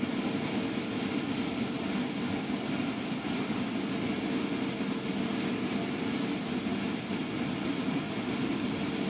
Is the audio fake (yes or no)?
no